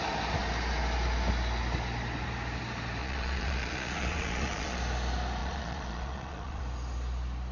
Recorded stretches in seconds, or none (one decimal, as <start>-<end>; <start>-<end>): 0.0-3.0; 4.8-5.4; 6.6-7.5